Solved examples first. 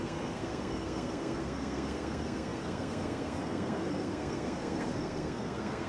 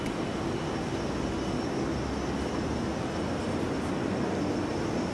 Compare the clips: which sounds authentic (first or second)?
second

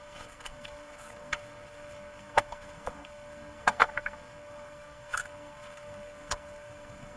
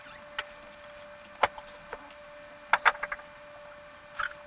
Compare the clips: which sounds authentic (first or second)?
second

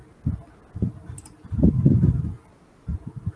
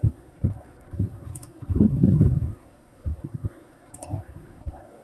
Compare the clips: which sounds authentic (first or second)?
first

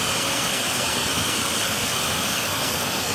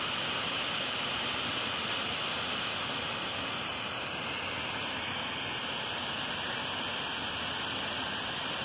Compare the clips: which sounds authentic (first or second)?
second